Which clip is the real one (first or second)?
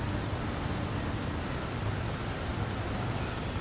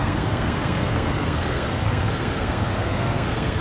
first